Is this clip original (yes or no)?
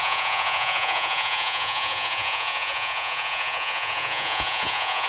no